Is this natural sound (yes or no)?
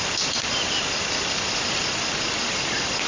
yes